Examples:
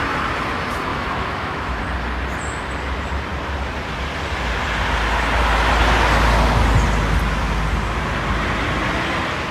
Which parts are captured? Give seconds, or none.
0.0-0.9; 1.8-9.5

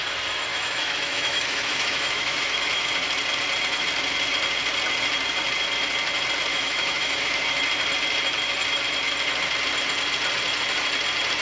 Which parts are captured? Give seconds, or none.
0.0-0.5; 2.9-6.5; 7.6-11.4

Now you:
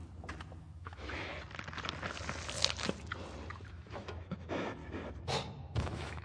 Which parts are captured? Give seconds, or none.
0.0-0.6; 1.3-3.7; 4.8-5.8